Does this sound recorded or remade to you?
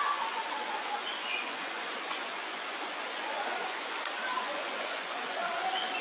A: remade